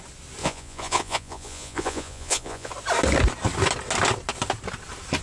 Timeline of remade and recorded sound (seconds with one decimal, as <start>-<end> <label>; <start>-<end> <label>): 0.0-0.4 recorded; 0.4-2.7 remade; 2.7-5.2 recorded